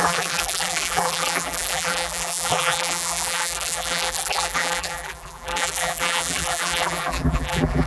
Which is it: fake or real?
fake